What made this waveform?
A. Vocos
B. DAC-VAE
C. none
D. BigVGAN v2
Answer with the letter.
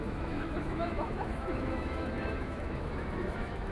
B